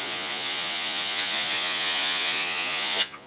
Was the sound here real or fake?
fake